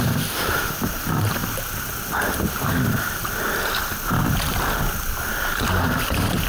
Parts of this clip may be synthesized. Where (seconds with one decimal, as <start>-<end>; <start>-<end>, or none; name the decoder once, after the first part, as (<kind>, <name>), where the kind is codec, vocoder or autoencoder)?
none